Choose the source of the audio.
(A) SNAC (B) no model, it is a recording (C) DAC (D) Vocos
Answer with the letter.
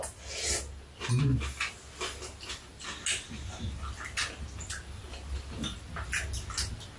B